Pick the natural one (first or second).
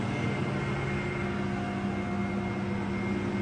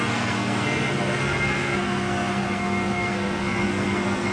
first